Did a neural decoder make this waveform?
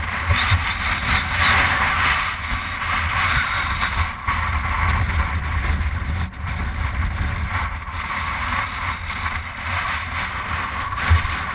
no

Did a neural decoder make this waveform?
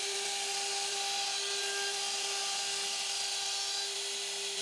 no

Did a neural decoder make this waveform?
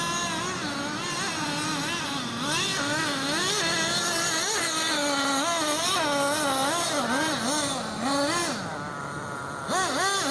no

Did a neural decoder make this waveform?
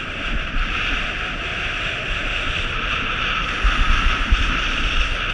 no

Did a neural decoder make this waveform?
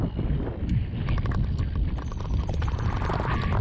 no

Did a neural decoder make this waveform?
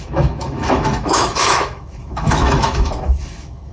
yes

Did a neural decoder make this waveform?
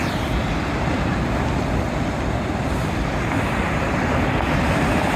no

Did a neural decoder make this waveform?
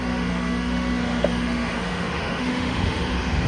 yes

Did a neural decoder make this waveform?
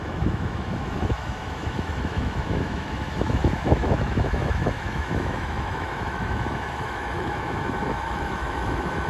yes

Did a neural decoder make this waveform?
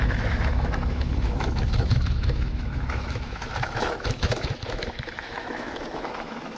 yes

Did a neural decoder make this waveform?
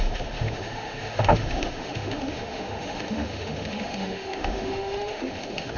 yes